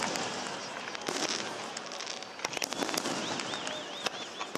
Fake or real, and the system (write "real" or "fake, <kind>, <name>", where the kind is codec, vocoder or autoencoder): real